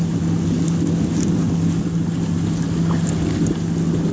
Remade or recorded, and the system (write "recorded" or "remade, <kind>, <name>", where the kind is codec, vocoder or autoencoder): recorded